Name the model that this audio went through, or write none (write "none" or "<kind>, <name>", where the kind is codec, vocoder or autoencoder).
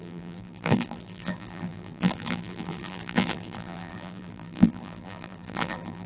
vocoder, BigVGAN v2